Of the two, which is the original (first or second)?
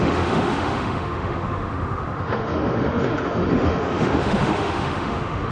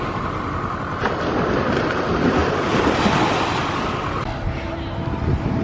second